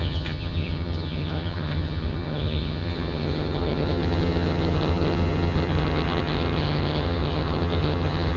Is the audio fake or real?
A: fake